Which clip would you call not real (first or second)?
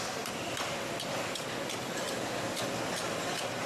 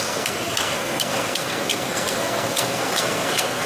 second